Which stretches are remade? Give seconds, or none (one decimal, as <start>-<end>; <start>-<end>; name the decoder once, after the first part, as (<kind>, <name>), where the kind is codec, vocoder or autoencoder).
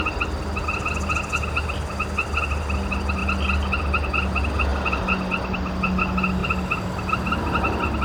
none